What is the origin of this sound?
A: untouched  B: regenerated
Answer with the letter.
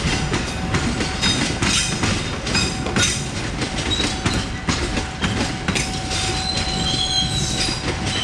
A